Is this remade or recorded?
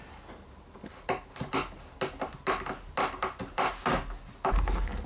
recorded